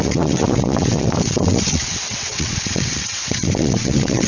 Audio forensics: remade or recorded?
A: remade